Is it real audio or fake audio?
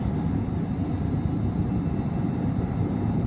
real